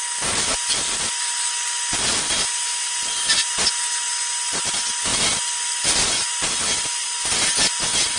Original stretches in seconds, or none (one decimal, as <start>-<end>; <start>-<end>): 0.0-0.5; 1.3-8.2

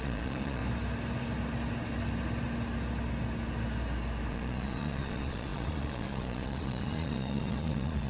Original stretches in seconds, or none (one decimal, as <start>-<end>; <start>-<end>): 0.6-4.3